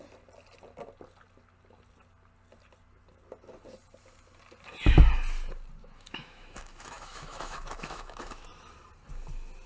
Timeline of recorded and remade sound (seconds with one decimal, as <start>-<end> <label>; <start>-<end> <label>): 0.0-5.8 recorded; 5.8-8.5 remade; 8.5-9.7 recorded